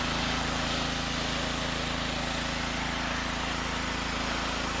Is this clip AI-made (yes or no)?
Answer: no